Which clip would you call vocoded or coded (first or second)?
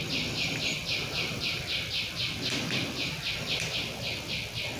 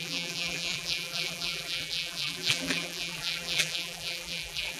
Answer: second